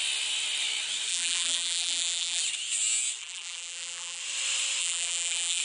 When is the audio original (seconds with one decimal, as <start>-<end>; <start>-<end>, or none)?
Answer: 0.0-1.1; 2.4-3.2; 4.2-4.8